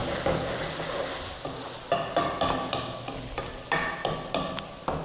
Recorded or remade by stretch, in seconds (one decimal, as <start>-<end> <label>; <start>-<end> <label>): 0.0-5.0 recorded